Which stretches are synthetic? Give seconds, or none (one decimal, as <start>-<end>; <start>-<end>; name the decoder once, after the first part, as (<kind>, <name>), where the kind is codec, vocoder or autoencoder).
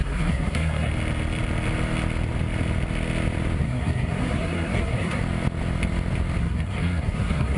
0.0-0.9 (codec, SNAC); 3.6-5.2; 6.4-7.6